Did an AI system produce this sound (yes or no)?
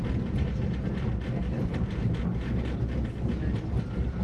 no